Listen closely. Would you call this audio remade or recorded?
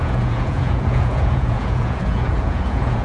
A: remade